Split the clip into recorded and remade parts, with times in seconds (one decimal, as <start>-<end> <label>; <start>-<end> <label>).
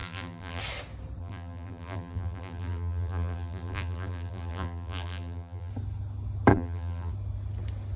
0.0-0.6 remade; 0.6-1.2 recorded; 1.2-5.7 remade; 5.7-6.5 recorded; 6.5-7.1 remade; 7.1-8.0 recorded